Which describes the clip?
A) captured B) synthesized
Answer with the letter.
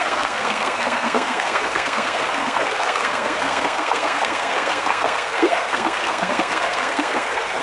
B